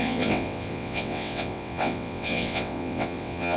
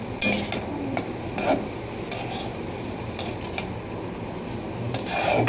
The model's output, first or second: first